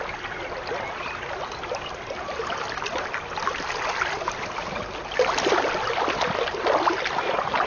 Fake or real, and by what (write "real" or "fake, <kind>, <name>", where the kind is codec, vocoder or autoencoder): real